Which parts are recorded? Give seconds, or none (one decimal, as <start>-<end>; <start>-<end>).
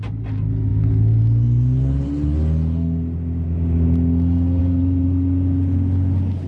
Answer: 0.0-6.5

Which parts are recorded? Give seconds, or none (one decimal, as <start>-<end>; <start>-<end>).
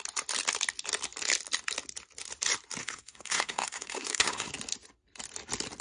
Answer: 0.0-2.8; 4.5-5.8